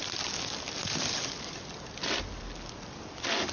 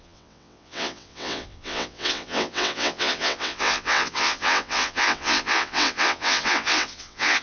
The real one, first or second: first